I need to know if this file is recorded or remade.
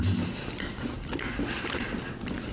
recorded